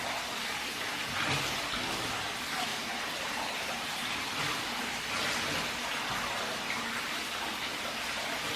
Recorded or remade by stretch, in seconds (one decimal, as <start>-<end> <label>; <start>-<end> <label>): 0.0-2.7 recorded; 2.7-5.0 remade; 5.0-8.6 recorded